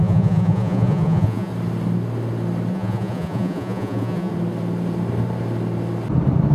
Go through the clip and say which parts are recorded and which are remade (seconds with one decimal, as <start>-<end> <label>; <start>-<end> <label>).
0.0-1.5 remade; 1.5-2.7 recorded; 2.7-4.3 remade; 4.3-6.5 recorded